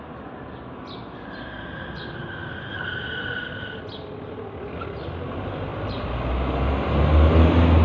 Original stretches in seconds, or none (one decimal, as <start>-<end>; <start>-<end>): 0.0-7.8